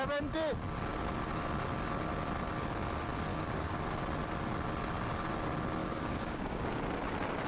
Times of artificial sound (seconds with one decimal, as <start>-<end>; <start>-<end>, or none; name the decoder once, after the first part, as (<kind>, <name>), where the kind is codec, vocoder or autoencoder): 3.3-3.8 (codec, DAC); 5.8-6.7